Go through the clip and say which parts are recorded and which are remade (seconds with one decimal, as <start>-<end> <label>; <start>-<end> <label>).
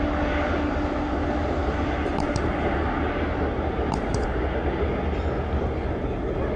0.0-6.6 recorded